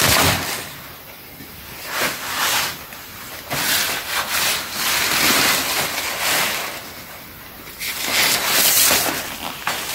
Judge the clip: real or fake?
real